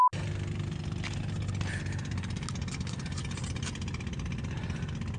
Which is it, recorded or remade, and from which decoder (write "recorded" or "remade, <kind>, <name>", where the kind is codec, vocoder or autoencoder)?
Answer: recorded